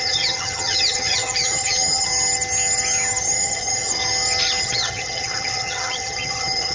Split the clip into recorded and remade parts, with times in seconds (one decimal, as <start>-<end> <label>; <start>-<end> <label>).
0.0-2.1 remade; 2.1-3.2 recorded; 3.2-4.0 remade; 4.0-4.6 recorded; 4.6-6.7 remade